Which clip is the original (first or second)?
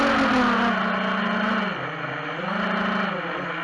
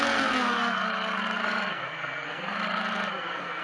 first